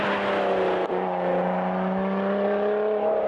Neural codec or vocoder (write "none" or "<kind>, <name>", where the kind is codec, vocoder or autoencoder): none